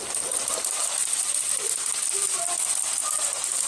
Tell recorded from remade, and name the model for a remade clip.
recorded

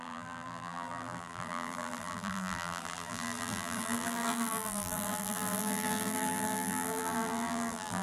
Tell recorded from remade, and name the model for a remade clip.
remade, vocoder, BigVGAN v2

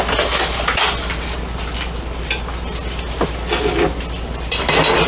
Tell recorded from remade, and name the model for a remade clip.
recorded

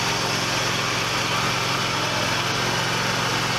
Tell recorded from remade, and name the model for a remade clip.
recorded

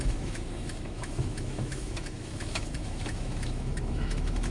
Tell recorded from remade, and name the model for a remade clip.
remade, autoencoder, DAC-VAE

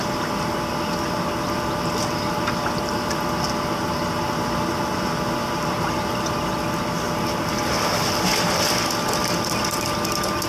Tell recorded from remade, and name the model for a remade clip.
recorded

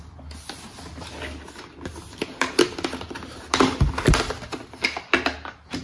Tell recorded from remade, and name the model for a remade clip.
recorded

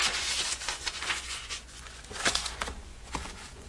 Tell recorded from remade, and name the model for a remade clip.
remade, vocoder, Vocos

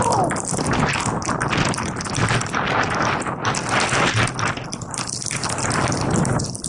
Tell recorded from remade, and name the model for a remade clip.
recorded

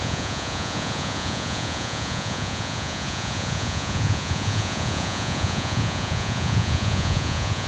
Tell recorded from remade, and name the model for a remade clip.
remade, vocoder, Vocos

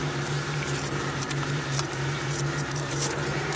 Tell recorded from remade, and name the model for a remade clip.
remade, vocoder, BigVGAN v2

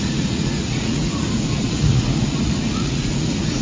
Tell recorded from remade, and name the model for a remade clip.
remade, vocoder, Vocos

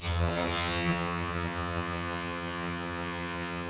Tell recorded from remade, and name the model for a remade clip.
remade, vocoder, HiFi-GAN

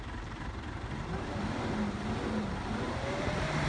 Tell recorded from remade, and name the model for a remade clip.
remade, vocoder, BigVGAN v2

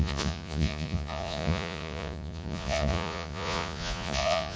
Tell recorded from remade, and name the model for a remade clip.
remade, vocoder, Vocos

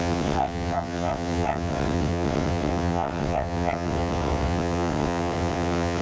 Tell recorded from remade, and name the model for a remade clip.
remade, vocoder, WaveNeXt